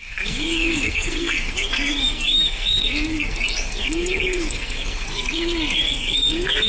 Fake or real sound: fake